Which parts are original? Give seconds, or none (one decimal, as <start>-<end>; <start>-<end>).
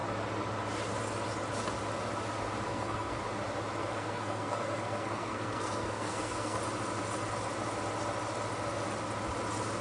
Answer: 0.0-2.7; 3.2-3.8; 6.6-9.8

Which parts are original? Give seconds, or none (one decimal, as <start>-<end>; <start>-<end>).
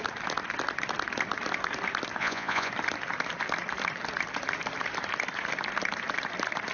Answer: 0.0-2.2; 2.7-6.7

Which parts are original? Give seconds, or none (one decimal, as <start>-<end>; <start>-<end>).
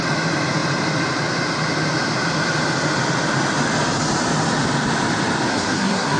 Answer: 0.0-5.5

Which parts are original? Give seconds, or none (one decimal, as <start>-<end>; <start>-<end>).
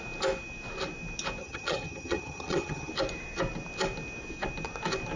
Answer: 0.0-1.4; 2.9-5.2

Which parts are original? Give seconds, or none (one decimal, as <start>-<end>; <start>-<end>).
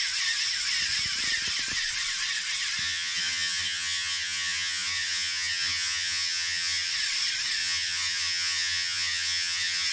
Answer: 0.0-2.8; 6.9-7.6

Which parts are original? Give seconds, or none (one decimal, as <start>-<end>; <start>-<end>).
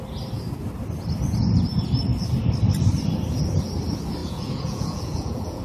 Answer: 0.0-4.2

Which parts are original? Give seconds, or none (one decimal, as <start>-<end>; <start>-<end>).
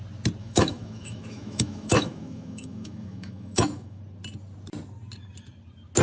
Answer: 0.0-0.4; 4.0-6.0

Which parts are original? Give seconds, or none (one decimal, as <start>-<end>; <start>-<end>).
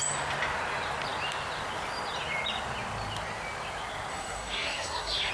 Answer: 0.0-4.1